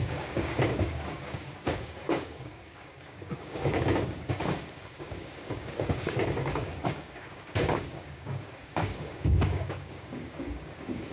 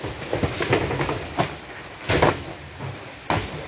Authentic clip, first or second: second